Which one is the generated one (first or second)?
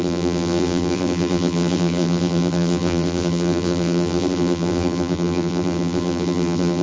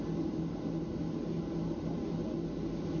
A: first